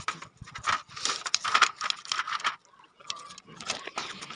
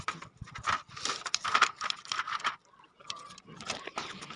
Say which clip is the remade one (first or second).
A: second